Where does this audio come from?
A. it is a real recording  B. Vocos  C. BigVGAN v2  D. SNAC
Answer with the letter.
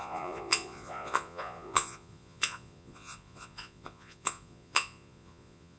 B